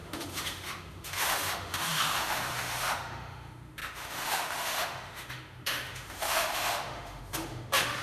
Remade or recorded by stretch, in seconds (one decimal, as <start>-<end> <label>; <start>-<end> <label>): 0.0-8.0 remade